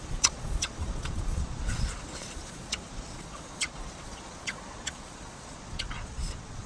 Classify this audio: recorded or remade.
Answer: remade